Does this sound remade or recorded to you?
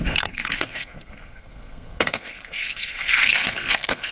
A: remade